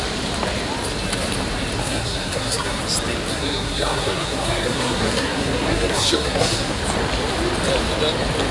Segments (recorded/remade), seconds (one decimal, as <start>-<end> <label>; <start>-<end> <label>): 0.0-1.8 recorded; 1.8-2.8 remade; 2.8-3.3 recorded; 3.3-6.8 remade; 6.8-8.5 recorded